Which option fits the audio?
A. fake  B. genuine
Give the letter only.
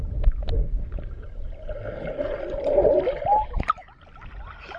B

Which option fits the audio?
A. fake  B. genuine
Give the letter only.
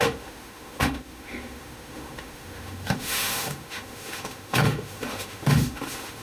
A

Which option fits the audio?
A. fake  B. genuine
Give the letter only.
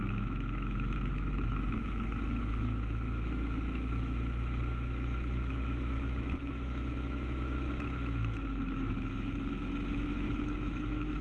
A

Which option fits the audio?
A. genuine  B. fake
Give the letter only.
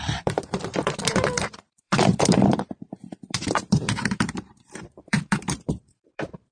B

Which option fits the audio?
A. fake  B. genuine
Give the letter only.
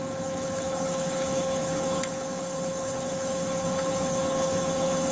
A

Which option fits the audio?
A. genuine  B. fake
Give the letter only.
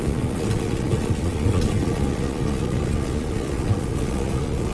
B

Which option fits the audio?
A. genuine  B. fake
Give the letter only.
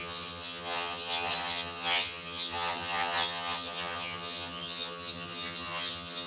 B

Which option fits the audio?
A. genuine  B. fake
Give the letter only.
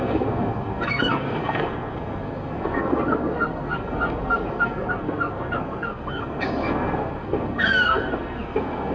B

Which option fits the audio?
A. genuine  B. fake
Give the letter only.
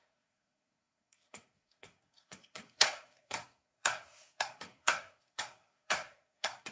B